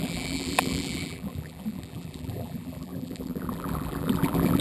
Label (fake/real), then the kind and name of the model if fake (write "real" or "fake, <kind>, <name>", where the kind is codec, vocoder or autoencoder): fake, vocoder, BigVGAN v2